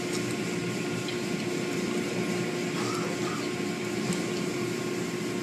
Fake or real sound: real